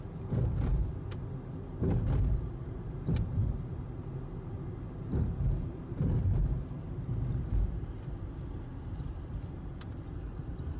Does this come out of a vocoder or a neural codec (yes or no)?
no